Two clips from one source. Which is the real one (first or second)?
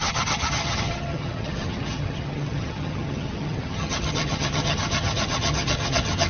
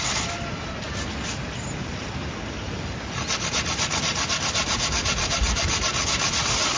second